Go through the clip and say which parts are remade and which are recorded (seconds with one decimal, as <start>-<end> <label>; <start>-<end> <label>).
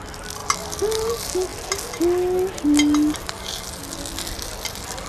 0.0-5.1 recorded